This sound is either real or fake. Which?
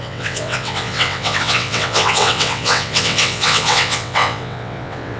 fake